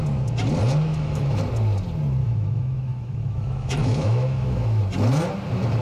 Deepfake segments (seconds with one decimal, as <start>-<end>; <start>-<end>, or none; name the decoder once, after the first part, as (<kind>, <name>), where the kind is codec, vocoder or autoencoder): 0.9-1.4 (autoencoder, DAC-VAE); 2.2-4.8